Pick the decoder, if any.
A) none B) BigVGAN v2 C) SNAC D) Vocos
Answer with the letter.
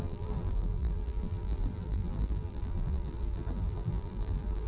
B